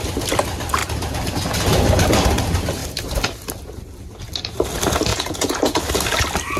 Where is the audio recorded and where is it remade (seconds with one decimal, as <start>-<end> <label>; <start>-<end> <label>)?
0.0-5.1 recorded; 5.1-5.8 remade; 5.8-6.6 recorded